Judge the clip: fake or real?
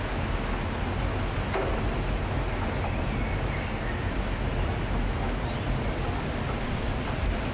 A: real